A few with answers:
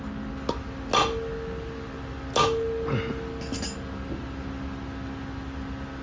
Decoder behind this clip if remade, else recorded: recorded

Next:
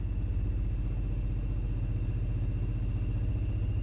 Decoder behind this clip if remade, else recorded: recorded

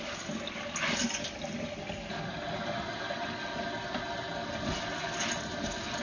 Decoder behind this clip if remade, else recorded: recorded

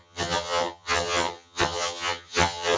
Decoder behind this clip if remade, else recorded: remade, vocoder, HiFi-GAN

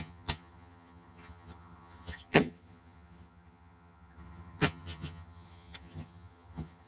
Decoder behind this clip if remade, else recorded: remade, vocoder, HiFi-GAN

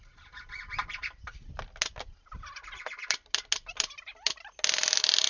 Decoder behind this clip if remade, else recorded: recorded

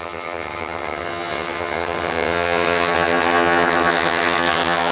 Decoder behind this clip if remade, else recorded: remade, vocoder, HiFi-GAN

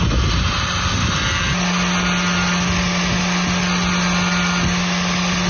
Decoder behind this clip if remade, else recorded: recorded